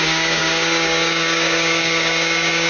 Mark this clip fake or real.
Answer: fake